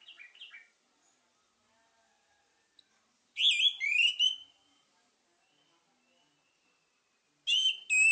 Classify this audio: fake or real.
real